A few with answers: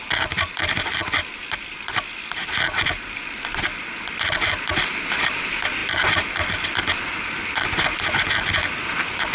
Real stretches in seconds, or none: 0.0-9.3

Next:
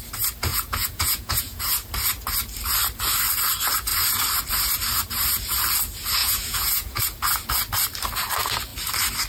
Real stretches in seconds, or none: 0.0-0.5; 1.6-6.2; 7.0-9.3

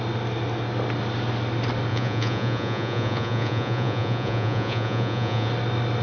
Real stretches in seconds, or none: 0.0-1.9; 5.5-6.0

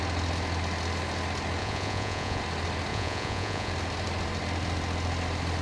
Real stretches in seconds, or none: 0.0-1.6; 2.4-2.9; 3.7-5.6

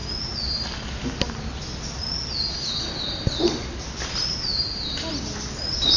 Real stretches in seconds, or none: 0.0-6.0

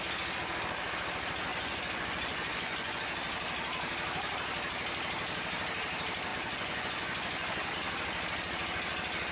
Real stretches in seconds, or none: 0.0-1.5; 3.0-6.3; 7.7-9.3

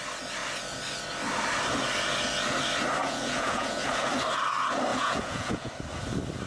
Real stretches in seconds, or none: 0.0-3.0; 4.1-4.9; 5.7-6.5

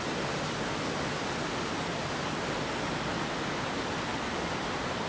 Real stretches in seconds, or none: 0.0-5.1